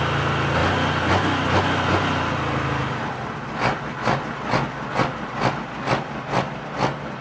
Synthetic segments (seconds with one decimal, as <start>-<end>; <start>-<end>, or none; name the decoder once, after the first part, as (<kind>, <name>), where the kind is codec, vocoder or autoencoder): none